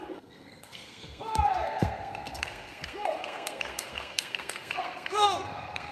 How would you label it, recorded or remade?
remade